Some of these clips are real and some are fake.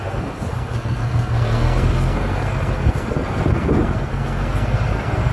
fake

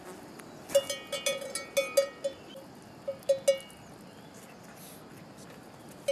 real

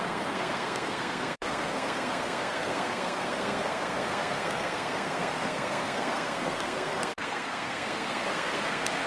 fake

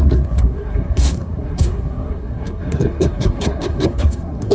fake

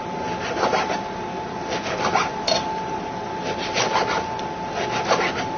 real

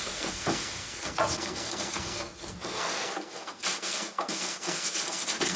fake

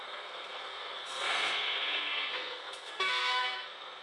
fake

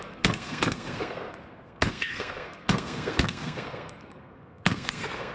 fake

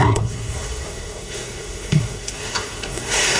fake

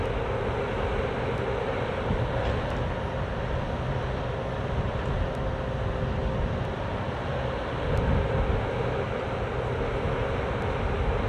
real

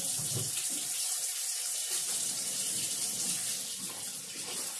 real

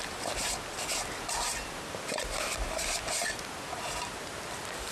real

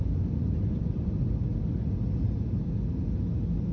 real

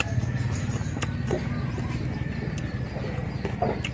real